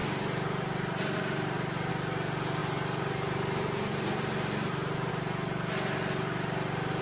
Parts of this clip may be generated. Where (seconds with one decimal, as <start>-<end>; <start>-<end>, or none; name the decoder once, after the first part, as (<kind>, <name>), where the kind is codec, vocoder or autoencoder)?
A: 0.0-1.9 (vocoder, BigVGAN v2); 2.6-5.1